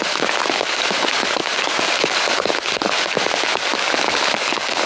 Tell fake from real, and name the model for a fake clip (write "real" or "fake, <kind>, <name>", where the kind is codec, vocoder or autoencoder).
fake, codec, DAC